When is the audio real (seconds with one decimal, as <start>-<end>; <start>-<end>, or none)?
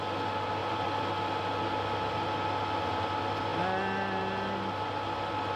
0.0-0.6; 1.1-5.6